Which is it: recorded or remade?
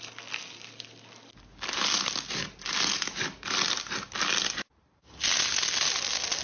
recorded